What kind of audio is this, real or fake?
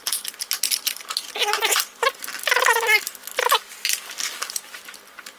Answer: real